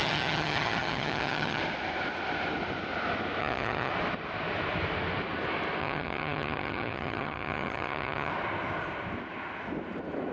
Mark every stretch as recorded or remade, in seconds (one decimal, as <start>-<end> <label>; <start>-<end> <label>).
0.0-1.6 remade; 1.6-3.4 recorded; 3.4-3.9 remade; 3.9-5.8 recorded; 5.8-8.3 remade; 8.3-10.3 recorded